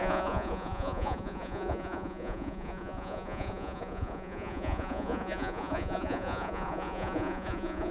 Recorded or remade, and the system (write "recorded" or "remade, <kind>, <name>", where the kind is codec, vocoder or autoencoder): remade, vocoder, Vocos